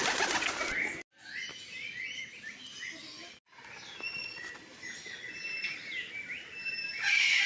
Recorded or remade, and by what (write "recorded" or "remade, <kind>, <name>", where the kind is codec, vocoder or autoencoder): recorded